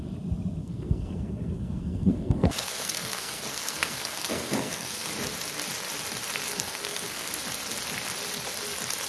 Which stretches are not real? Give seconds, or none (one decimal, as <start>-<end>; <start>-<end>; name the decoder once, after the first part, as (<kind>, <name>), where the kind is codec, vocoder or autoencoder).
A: 0.6-5.1 (codec, SNAC); 6.5-7.3